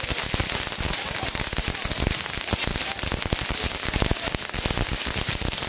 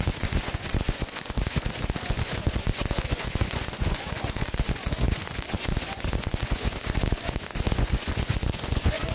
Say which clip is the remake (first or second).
second